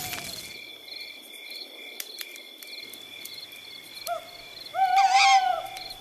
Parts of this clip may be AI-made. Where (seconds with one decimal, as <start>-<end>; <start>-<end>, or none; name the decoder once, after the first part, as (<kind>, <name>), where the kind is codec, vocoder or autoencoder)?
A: none